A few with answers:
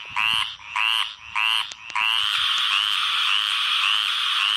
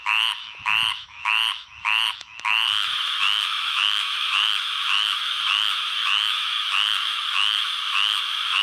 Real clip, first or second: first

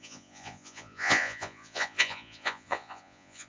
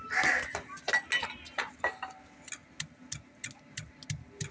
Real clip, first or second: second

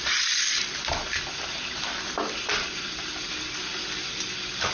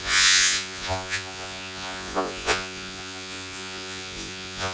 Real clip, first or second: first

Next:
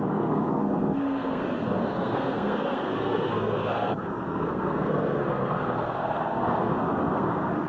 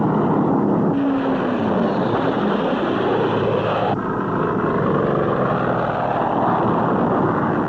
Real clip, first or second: second